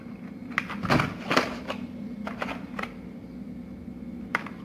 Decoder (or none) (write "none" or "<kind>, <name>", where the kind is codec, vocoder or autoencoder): none